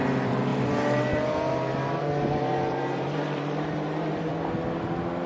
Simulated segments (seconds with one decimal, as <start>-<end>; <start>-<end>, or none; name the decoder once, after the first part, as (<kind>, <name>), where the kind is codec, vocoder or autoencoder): 0.0-4.3 (vocoder, BigVGAN v2)